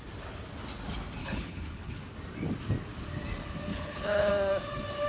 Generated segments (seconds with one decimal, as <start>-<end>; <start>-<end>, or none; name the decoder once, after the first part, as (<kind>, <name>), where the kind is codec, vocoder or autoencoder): 1.2-2.0 (codec, HILCodec); 3.7-4.3